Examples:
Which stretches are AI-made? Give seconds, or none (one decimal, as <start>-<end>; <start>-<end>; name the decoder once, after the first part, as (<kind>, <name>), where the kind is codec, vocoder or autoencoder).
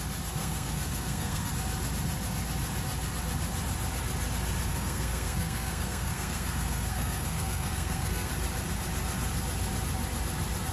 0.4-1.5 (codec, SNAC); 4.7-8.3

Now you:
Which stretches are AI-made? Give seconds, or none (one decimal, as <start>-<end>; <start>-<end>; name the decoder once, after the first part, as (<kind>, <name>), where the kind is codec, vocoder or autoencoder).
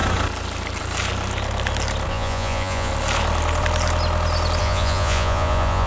2.1-2.9 (vocoder, Vocos); 4.6-5.9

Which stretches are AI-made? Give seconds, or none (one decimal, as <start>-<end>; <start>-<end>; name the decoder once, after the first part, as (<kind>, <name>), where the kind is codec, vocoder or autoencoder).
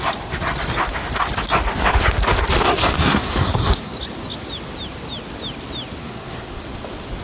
2.8-3.9 (codec, SNAC); 6.0-6.6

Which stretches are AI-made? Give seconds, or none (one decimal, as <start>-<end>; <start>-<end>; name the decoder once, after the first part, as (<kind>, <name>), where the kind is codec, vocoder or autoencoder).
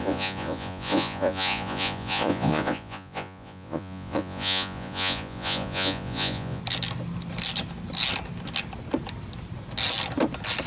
0.0-6.6 (vocoder, Vocos)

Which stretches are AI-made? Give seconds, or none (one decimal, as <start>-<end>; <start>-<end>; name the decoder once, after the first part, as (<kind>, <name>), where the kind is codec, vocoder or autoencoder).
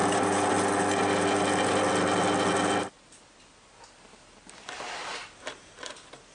none